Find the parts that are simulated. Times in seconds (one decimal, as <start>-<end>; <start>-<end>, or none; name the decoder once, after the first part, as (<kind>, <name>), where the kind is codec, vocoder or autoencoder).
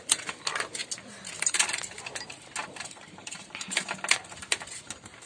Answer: 2.6-3.5 (vocoder, BigVGAN v2)